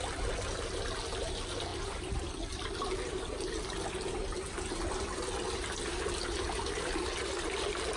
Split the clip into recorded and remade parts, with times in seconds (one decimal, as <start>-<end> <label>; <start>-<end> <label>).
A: 0.0-8.0 recorded